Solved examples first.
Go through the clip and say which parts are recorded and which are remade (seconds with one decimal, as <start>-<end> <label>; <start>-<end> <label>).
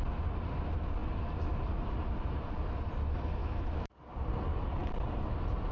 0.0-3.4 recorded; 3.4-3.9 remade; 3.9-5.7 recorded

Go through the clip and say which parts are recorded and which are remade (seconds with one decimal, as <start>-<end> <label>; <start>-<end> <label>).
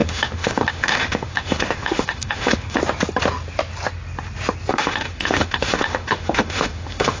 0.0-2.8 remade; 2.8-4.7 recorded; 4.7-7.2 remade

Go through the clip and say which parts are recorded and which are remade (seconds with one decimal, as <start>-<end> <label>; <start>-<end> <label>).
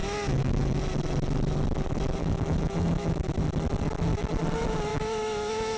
0.0-0.8 remade; 0.8-2.2 recorded; 2.2-3.3 remade; 3.3-4.9 recorded; 4.9-5.8 remade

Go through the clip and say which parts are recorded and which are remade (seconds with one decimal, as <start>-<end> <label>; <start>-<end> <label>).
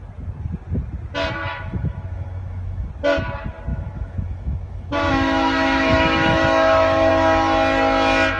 0.0-1.5 recorded; 1.5-2.9 remade; 2.9-3.7 recorded; 3.7-7.1 remade; 7.1-8.4 recorded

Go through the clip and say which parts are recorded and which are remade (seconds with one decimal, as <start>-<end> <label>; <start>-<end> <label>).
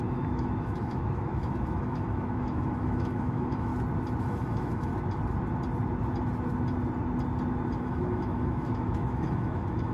0.0-3.7 remade; 3.7-4.2 recorded; 4.2-4.9 remade; 4.9-7.8 recorded; 7.8-9.9 remade